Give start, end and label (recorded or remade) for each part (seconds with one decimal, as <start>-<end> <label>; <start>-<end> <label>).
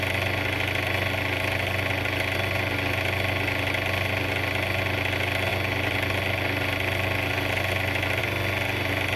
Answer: 0.0-9.2 recorded